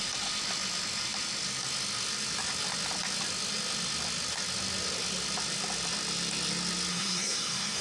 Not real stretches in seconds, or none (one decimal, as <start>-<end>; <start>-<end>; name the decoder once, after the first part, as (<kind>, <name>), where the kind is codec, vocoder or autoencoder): 6.9-7.8 (codec, SNAC)